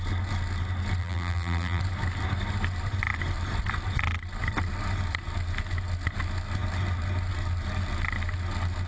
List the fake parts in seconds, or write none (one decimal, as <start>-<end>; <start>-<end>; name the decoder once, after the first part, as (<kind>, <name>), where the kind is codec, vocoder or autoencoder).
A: 1.0-1.8 (vocoder, BigVGAN v2)